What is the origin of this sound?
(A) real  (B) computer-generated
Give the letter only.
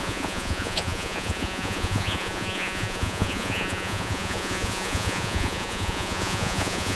B